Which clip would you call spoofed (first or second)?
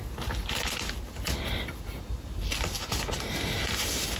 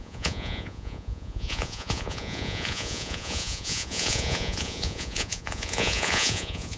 second